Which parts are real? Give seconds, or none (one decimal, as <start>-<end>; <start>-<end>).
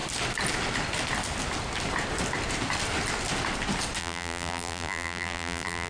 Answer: 0.0-4.0